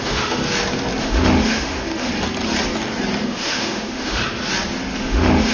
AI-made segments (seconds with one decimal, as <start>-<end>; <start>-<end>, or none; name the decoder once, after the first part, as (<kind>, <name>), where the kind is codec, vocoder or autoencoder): 0.0-0.4 (autoencoder, DAC-VAE); 1.0-2.1; 3.3-4.2; 5.0-5.5